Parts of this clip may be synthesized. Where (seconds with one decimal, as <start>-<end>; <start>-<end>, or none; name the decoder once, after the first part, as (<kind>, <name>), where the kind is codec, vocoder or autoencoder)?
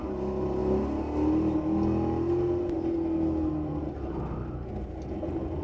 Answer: none